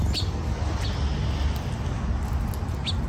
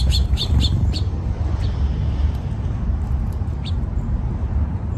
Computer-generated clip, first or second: second